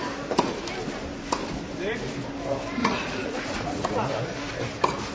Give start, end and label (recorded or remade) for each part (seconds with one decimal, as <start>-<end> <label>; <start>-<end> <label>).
0.0-2.8 recorded; 2.8-3.9 remade; 3.9-5.1 recorded